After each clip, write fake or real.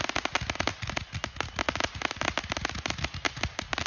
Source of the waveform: real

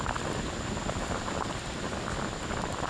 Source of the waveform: real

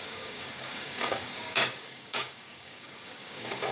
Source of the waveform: fake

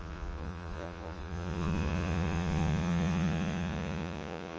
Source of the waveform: fake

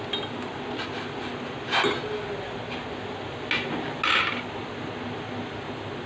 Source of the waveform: real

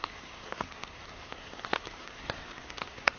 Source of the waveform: fake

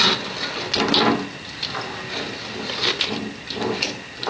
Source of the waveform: real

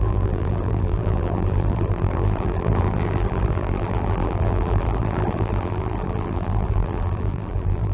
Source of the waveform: fake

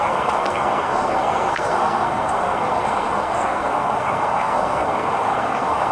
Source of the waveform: fake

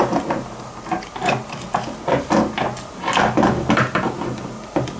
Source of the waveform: real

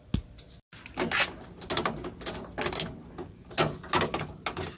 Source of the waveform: real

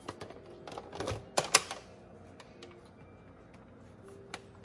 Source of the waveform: real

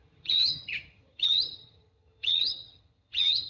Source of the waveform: fake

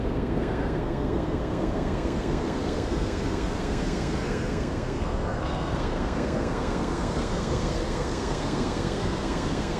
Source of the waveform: fake